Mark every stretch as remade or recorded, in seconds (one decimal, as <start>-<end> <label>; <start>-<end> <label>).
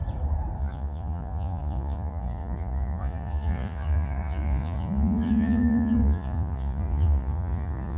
0.0-0.6 recorded; 0.6-8.0 remade